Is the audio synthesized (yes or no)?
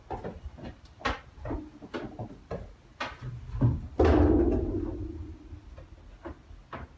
no